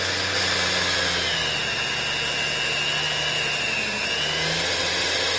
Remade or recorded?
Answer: recorded